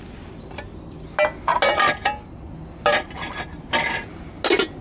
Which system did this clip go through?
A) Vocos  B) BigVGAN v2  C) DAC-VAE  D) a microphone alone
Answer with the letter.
D